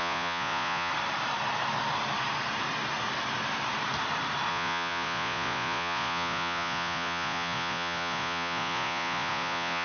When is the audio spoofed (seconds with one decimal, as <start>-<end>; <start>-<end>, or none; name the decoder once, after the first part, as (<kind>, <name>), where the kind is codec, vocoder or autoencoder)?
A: 0.0-0.9 (vocoder, Vocos); 4.5-9.8